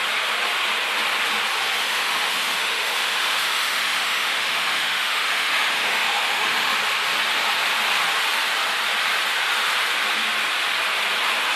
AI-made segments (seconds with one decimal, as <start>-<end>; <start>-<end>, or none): 1.8-6.7